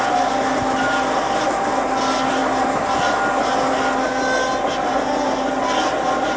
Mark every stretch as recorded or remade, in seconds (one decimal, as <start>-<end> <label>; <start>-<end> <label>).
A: 0.0-6.4 recorded